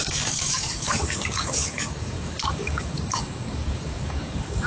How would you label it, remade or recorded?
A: remade